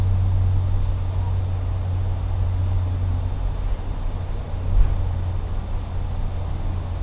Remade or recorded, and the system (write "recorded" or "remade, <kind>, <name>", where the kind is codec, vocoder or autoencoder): recorded